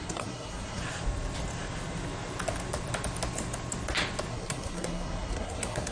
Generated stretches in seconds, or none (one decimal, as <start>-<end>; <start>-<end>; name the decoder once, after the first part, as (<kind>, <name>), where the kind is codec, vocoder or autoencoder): 0.0-0.8 (codec, SNAC); 4.3-5.9